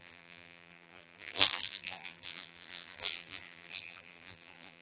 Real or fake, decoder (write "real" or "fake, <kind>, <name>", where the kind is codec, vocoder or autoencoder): fake, vocoder, BigVGAN v2